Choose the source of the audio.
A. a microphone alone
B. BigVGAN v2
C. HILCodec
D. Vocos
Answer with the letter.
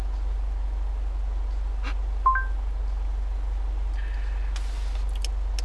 A